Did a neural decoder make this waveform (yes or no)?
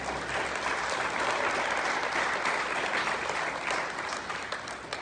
no